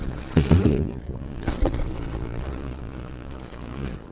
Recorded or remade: remade